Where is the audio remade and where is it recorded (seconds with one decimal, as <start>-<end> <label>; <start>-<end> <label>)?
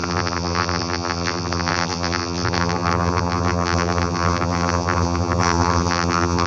0.0-6.5 remade